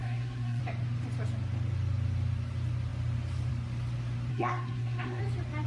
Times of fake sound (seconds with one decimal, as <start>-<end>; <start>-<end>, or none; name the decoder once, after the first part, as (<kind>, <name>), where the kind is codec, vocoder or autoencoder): 0.0-0.6 (codec, SNAC); 4.3-5.2